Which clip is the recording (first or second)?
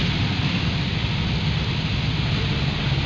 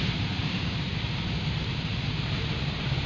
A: first